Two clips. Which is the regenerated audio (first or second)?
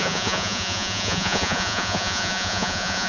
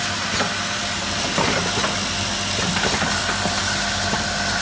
first